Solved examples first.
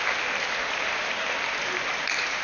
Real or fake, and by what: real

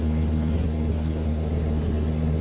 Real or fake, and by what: fake, codec, SNAC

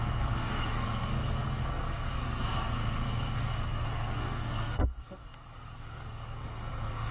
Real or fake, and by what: fake, codec, SNAC